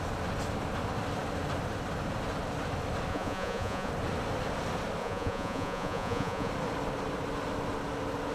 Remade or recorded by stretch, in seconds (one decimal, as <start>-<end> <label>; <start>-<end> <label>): 0.0-3.1 recorded; 3.1-3.9 remade; 3.9-5.0 recorded; 5.0-6.5 remade; 6.5-8.3 recorded